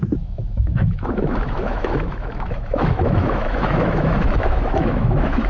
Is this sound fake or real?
fake